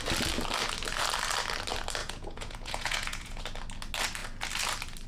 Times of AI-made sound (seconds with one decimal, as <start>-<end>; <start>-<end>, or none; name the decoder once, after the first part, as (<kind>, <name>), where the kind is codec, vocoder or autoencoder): 2.0-3.4 (vocoder, Vocos)